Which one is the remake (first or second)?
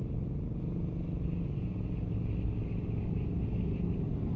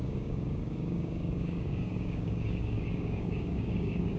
second